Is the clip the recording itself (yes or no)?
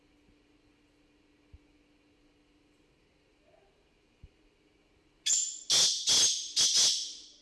yes